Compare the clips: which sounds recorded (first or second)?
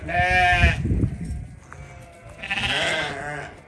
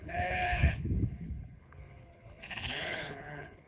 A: first